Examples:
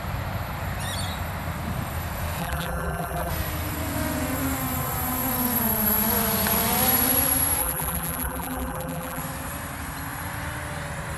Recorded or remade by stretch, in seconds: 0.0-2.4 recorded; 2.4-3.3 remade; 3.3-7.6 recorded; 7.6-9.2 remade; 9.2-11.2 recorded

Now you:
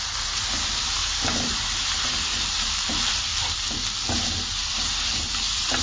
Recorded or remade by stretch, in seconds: 0.0-3.3 remade; 3.3-4.8 recorded; 4.8-5.8 remade

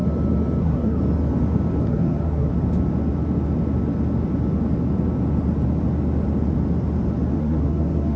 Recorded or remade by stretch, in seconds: 0.0-0.6 recorded; 0.6-1.0 remade; 1.0-1.8 recorded; 1.8-2.5 remade; 2.5-7.4 recorded; 7.4-8.2 remade

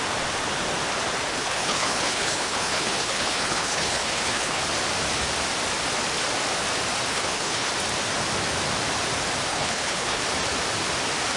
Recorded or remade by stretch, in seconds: 0.0-1.3 recorded; 1.3-4.6 remade; 4.6-7.1 recorded; 7.1-7.7 remade; 7.7-9.5 recorded; 9.5-10.2 remade; 10.2-11.4 recorded

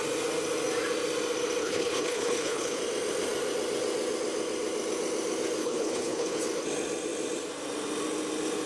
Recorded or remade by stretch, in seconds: 0.0-1.6 recorded; 1.6-2.8 remade; 2.8-5.6 recorded; 5.6-6.4 remade; 6.4-8.7 recorded

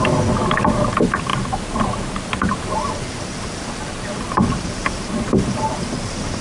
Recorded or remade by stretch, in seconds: 0.0-6.4 recorded